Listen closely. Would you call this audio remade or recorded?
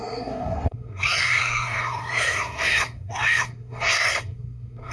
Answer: remade